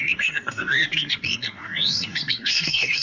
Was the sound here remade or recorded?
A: remade